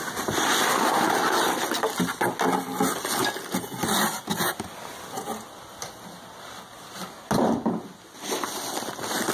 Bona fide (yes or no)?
yes